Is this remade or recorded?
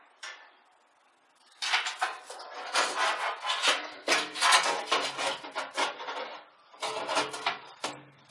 recorded